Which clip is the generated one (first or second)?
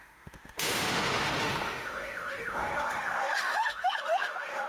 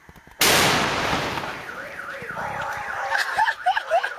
first